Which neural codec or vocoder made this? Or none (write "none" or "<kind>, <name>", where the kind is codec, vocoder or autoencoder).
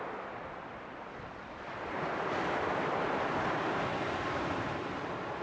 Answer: none